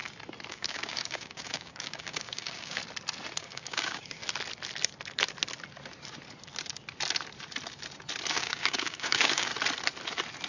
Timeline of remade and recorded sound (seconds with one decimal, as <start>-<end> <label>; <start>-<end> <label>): 0.0-0.5 recorded; 0.5-2.8 remade; 2.8-3.4 recorded; 3.4-4.2 remade; 4.2-8.3 recorded; 8.3-9.5 remade; 9.5-10.5 recorded